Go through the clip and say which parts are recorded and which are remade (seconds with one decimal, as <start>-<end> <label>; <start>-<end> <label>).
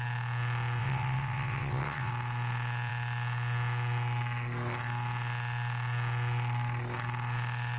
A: 0.0-0.8 recorded; 0.8-2.1 remade; 2.1-7.8 recorded